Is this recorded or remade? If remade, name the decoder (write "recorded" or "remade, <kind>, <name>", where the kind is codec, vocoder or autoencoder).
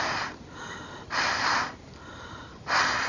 recorded